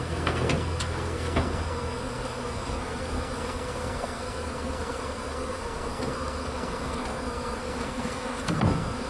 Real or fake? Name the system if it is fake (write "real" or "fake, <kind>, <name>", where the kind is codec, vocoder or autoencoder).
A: fake, codec, SNAC